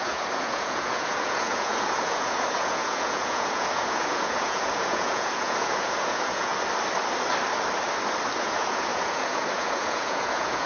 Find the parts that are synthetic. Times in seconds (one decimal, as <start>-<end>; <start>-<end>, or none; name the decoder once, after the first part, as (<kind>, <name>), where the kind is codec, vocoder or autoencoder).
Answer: 0.0-6.5 (vocoder, Vocos); 8.4-10.7